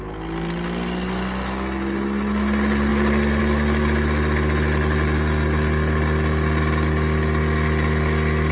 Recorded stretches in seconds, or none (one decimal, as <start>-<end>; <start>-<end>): 0.0-8.5